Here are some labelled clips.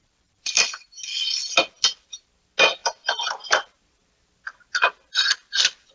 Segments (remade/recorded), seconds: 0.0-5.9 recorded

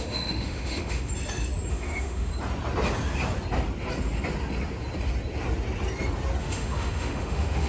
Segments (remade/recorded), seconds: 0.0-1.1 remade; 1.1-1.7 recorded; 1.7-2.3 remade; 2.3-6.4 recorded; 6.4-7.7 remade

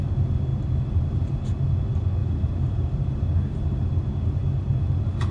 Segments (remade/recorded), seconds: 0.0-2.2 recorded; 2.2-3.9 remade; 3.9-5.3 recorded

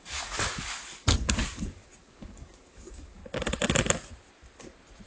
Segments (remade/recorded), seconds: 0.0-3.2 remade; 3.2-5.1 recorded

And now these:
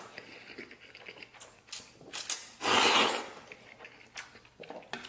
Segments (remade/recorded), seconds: 0.0-5.1 recorded

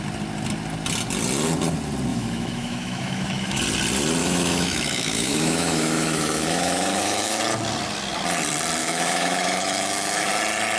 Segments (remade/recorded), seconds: 0.0-2.1 recorded; 2.1-3.6 remade; 3.6-4.2 recorded; 4.2-7.4 remade; 7.4-8.8 recorded; 8.8-10.3 remade; 10.3-10.8 recorded